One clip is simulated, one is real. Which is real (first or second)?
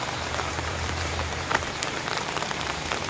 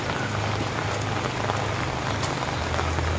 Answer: second